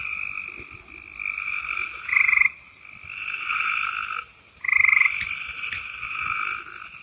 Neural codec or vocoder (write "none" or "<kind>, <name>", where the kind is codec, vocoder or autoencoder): none